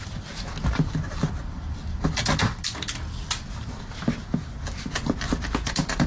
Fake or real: real